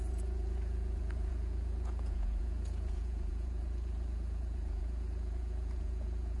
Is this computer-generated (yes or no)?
yes